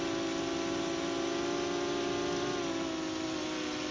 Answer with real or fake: real